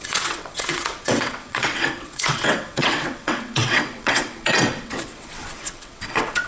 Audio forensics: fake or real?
fake